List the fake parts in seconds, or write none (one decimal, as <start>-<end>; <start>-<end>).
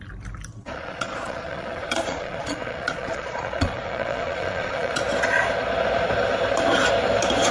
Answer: 0.5-5.0